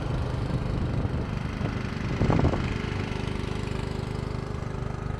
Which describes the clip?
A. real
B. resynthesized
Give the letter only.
A